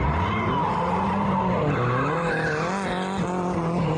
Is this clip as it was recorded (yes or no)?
yes